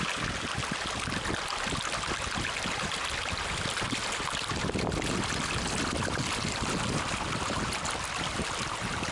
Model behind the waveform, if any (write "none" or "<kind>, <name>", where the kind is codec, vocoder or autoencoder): none